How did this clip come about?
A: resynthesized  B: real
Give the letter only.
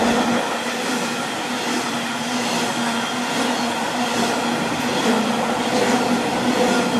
B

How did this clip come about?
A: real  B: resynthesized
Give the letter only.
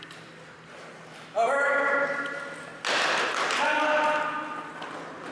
A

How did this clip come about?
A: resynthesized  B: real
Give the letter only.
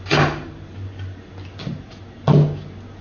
B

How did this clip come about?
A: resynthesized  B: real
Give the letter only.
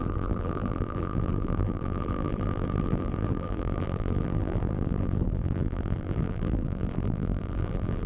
A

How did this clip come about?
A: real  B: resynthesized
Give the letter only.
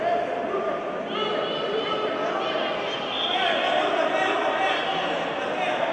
A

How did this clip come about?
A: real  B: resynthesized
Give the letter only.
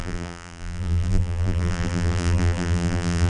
B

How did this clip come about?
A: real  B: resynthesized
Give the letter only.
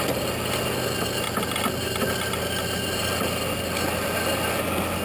A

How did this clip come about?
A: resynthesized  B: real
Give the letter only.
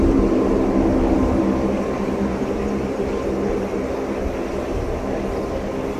B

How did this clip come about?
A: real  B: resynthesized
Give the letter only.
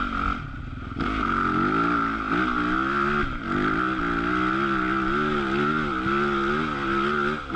A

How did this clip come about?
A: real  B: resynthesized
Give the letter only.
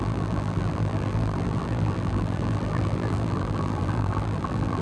B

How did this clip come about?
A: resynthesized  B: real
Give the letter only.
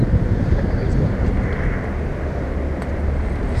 B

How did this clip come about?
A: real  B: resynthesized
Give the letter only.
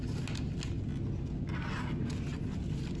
A